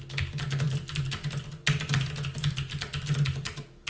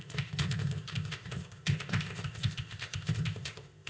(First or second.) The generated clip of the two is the second